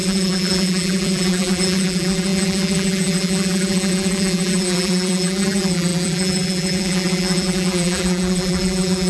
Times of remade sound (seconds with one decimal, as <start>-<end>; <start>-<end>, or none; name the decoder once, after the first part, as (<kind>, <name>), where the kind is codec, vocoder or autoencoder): 0.0-9.1 (vocoder, BigVGAN v2)